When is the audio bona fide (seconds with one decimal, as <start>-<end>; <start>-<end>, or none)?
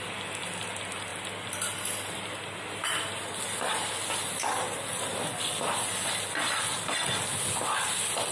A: 0.0-8.3